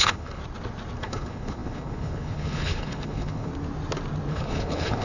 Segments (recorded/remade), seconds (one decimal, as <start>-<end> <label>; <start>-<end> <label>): 0.0-0.4 remade; 0.4-1.0 recorded; 1.0-3.5 remade; 3.5-4.3 recorded; 4.3-5.0 remade